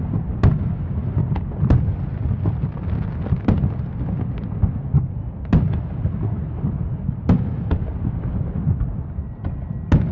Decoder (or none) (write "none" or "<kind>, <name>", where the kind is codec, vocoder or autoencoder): none